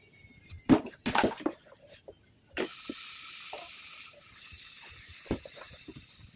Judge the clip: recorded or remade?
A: recorded